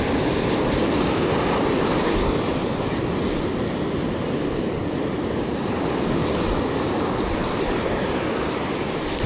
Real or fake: real